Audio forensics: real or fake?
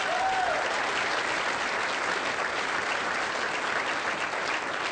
real